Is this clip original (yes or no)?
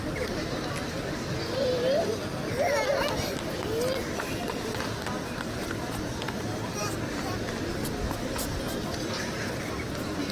yes